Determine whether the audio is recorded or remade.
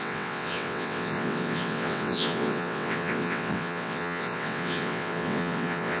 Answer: remade